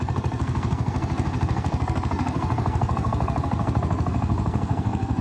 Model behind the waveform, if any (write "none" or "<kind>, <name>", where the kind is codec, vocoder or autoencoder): codec, SNAC